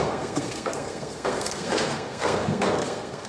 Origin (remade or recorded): remade